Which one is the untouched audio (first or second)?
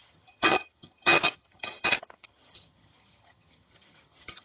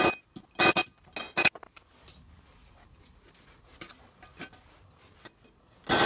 second